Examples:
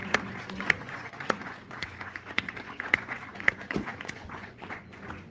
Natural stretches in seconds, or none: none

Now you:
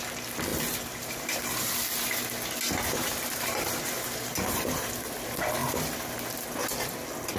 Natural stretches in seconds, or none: 0.0-7.4

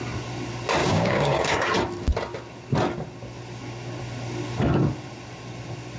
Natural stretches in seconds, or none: 0.0-0.8; 1.7-6.0

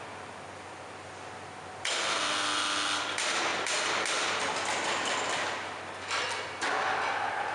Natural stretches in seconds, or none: 0.0-7.5

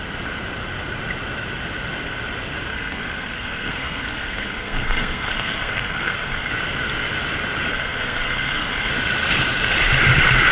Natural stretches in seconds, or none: 0.0-2.7; 6.5-7.7; 8.9-10.5

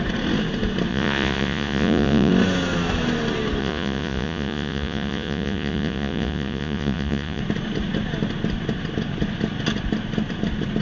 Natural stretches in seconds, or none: 0.0-0.9; 2.3-3.6; 7.4-10.8

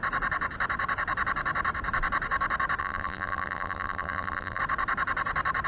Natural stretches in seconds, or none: 0.0-2.8; 4.6-5.7

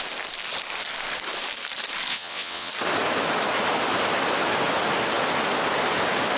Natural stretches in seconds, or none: 0.0-2.1; 2.7-6.4